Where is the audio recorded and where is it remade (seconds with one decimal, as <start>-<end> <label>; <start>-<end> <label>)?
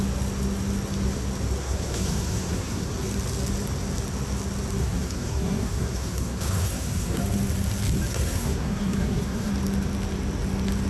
0.0-1.6 recorded; 1.6-2.9 remade; 2.9-4.8 recorded; 4.8-7.2 remade; 7.2-8.1 recorded; 8.1-9.5 remade; 9.5-10.9 recorded